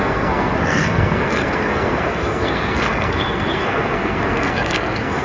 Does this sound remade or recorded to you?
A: remade